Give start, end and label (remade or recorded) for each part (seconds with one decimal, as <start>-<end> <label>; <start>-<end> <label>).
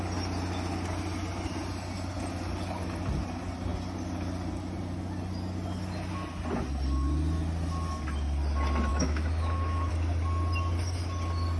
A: 0.0-8.9 recorded; 8.9-9.9 remade; 9.9-11.6 recorded